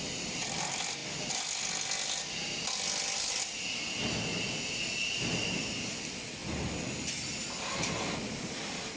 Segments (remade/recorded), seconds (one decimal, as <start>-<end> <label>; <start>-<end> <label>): 0.0-9.0 recorded